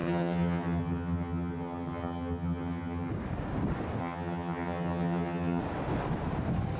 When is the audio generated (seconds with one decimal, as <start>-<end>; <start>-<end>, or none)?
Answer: 0.0-3.1; 4.0-5.6